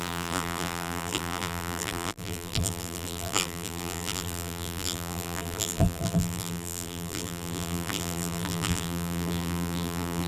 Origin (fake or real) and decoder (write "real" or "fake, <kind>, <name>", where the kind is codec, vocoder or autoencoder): fake, vocoder, BigVGAN v2